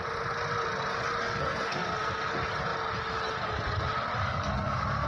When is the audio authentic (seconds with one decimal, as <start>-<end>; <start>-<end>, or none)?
0.0-1.2; 2.3-4.2